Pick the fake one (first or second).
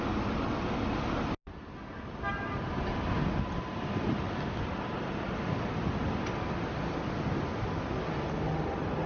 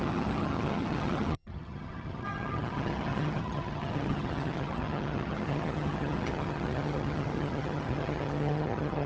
second